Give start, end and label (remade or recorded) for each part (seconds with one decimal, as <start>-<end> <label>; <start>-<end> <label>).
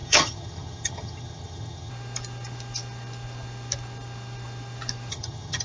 0.0-1.9 remade; 1.9-5.1 recorded; 5.1-5.6 remade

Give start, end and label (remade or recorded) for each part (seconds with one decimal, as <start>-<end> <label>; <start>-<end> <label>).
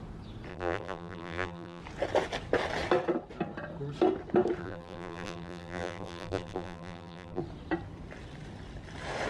0.0-0.5 recorded; 0.5-1.8 remade; 1.8-4.6 recorded; 4.6-7.4 remade; 7.4-9.3 recorded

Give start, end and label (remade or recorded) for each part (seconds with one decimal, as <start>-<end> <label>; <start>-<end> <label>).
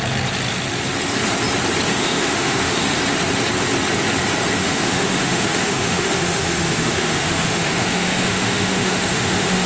0.0-1.9 recorded; 1.9-3.0 remade; 3.0-4.6 recorded; 4.6-9.7 remade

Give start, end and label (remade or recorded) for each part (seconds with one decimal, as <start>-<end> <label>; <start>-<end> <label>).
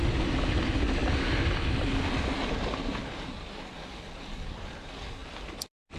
0.0-6.0 recorded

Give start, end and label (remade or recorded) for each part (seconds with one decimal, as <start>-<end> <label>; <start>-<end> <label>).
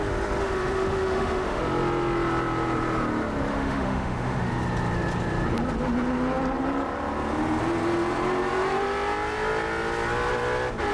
0.0-0.4 recorded; 0.4-1.6 remade; 1.6-3.5 recorded; 3.5-4.5 remade; 4.5-10.9 recorded